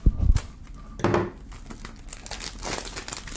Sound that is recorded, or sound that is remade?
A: recorded